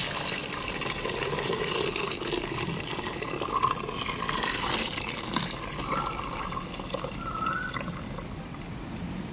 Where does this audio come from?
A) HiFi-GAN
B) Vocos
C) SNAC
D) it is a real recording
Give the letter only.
D